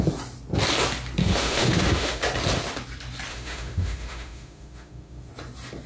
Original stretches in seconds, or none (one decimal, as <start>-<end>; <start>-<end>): 0.0-1.2; 2.2-3.3; 5.3-5.9